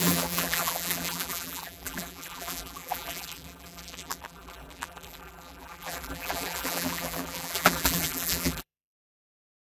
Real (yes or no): no